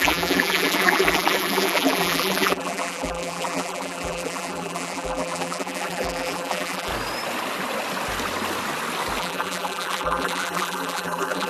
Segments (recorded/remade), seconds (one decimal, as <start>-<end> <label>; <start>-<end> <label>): 0.0-6.9 remade; 6.9-9.2 recorded; 9.2-11.5 remade